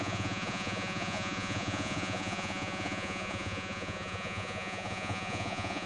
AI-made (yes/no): yes